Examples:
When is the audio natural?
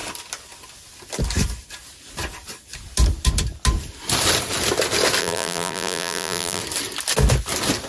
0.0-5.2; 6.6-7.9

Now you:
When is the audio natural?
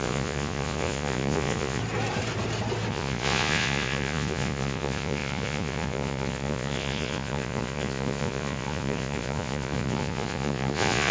1.8-2.9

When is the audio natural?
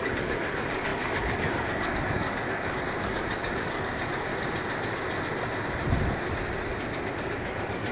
4.3-7.1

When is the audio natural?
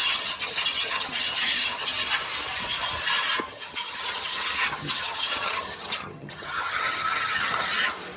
1.9-3.5; 7.5-8.2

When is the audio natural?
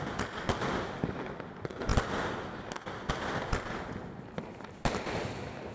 0.0-5.7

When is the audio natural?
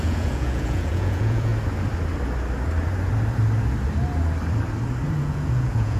1.5-5.1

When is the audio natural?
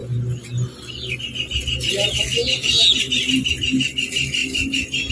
0.0-5.1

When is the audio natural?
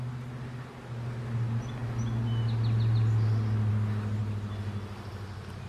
0.0-5.7